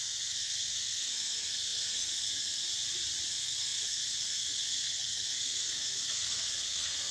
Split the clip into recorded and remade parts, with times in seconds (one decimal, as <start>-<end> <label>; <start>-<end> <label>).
0.0-2.7 remade; 2.7-3.3 recorded; 3.3-7.1 remade